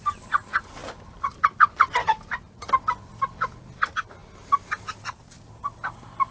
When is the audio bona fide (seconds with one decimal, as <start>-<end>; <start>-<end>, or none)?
0.0-0.8; 2.7-6.3